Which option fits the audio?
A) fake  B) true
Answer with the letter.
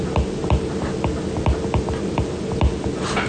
B